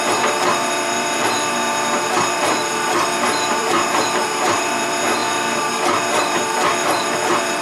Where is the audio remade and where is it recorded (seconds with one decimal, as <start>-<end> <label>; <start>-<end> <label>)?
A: 0.0-7.6 remade